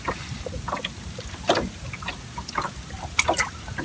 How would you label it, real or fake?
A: real